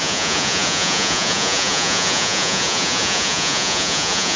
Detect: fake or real fake